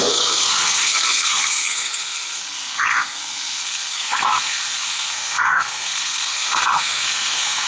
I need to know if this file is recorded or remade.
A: remade